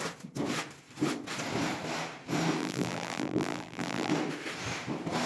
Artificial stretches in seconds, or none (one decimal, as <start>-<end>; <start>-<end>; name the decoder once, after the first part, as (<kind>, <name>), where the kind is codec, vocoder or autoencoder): 2.6-4.1 (vocoder, BigVGAN v2)